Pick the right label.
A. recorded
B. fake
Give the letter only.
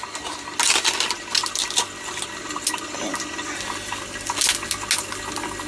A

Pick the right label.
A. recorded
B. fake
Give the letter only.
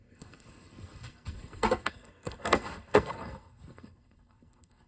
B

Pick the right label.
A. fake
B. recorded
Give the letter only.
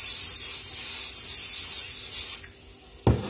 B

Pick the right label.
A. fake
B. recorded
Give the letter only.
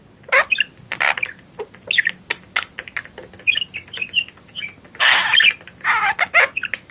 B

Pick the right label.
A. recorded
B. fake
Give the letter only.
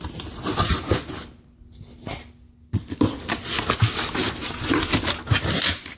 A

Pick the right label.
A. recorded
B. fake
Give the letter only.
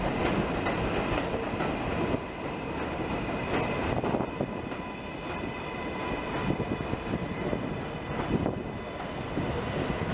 A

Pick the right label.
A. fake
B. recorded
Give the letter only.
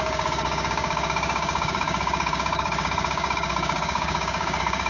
A